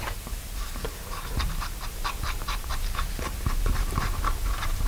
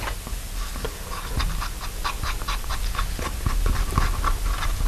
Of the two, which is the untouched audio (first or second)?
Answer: second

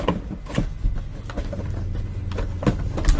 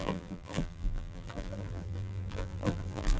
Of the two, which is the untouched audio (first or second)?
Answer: first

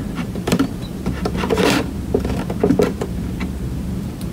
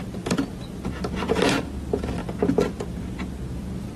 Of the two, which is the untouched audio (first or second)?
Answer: second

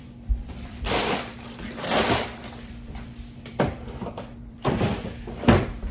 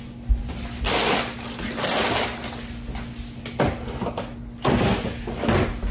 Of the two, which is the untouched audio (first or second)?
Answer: second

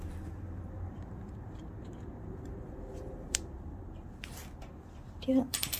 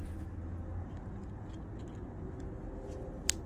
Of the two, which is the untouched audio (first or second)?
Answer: second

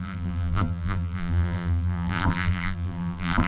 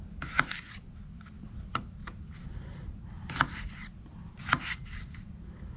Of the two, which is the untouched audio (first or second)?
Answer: second